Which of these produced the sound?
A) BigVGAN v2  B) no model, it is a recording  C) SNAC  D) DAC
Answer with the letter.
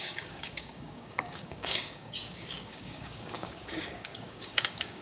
D